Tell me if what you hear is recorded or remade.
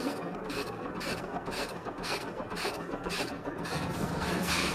remade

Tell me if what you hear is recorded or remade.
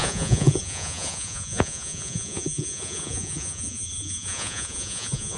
remade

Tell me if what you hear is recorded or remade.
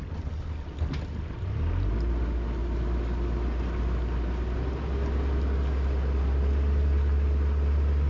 recorded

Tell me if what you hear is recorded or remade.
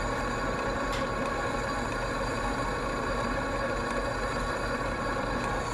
recorded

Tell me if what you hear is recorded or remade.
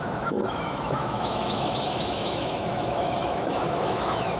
remade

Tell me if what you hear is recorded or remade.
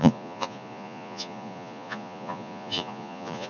remade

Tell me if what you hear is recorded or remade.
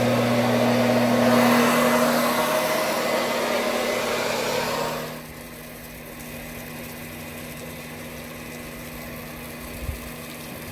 recorded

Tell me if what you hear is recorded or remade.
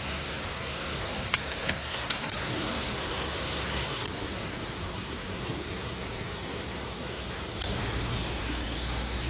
remade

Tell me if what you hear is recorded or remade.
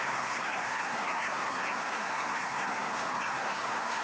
remade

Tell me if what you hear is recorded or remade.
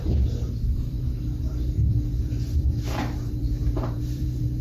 remade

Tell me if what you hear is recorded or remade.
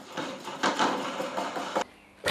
recorded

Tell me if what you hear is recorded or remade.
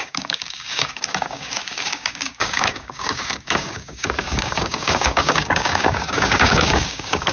remade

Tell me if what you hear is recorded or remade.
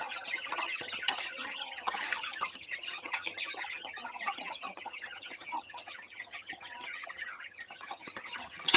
remade